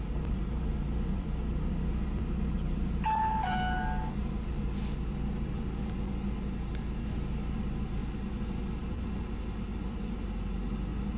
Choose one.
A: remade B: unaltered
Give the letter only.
B